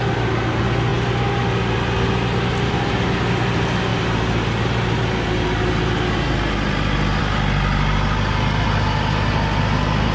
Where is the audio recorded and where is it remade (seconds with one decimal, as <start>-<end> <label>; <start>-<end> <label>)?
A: 0.0-10.1 recorded